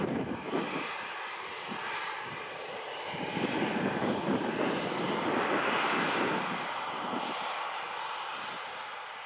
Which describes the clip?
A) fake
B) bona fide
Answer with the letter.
B